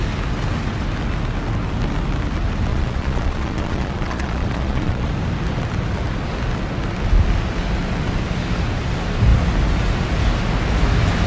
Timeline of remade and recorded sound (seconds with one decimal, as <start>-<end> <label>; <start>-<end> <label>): 0.0-2.7 recorded; 2.7-5.1 remade; 5.1-11.3 recorded

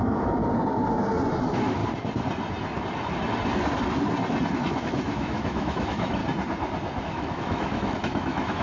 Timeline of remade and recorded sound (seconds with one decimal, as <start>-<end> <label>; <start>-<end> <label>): 0.0-0.4 remade; 0.4-1.4 recorded; 1.4-1.8 remade; 1.8-4.5 recorded; 4.5-6.2 remade; 6.2-7.0 recorded; 7.0-8.6 remade

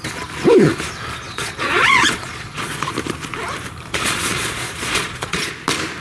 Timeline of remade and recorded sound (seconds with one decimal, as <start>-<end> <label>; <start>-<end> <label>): 0.0-1.2 recorded; 1.2-2.9 remade; 2.9-3.9 recorded; 3.9-5.5 remade; 5.5-6.0 recorded

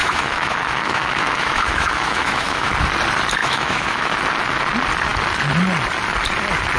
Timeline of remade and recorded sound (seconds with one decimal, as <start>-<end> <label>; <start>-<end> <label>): 0.0-2.7 remade; 2.7-3.4 recorded; 3.4-4.1 remade; 4.1-6.8 recorded

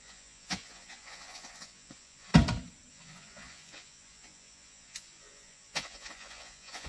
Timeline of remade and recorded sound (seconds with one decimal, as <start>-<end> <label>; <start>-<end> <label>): 0.0-2.3 remade; 2.3-2.9 recorded; 2.9-6.9 remade

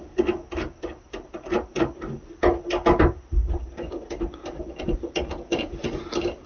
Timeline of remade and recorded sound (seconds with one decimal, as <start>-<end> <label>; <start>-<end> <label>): 0.0-6.5 recorded